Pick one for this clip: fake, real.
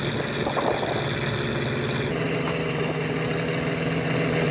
real